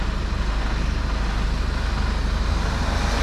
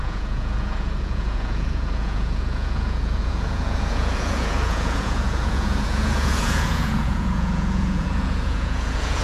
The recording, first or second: first